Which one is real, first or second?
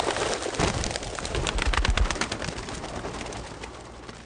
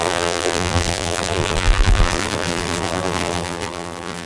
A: first